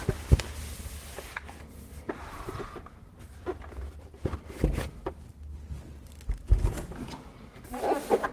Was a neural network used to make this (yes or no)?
no